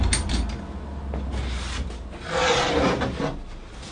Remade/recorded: recorded